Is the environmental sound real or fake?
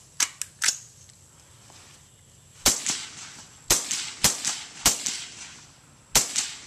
real